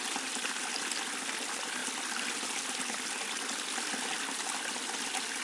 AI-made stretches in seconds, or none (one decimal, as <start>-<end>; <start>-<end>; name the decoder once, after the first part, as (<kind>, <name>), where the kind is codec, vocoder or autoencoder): none